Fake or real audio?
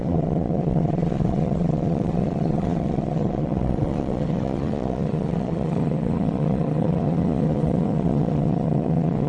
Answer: fake